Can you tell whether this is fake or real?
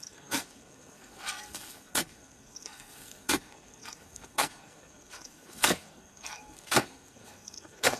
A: fake